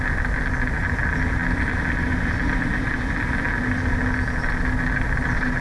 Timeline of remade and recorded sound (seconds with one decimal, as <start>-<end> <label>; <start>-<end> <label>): 0.0-5.6 recorded